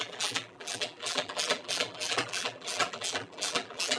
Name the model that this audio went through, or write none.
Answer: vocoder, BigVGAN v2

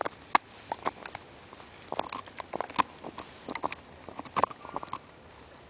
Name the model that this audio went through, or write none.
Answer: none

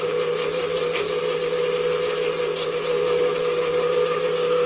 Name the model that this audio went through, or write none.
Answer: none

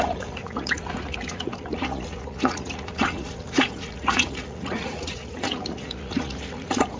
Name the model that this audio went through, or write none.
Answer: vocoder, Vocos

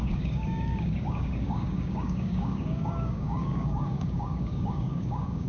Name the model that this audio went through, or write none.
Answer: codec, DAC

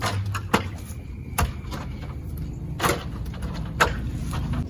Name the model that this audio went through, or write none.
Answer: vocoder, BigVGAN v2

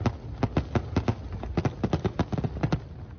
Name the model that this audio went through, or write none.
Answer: none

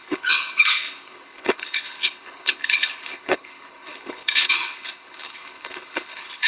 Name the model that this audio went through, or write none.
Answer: codec, HILCodec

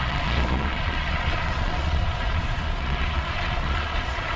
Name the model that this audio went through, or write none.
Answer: vocoder, Vocos